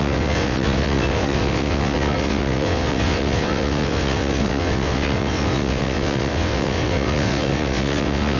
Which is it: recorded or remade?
remade